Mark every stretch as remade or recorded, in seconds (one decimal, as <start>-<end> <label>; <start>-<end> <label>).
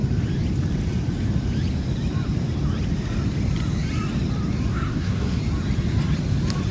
0.0-4.7 recorded; 4.7-5.4 remade; 5.4-6.7 recorded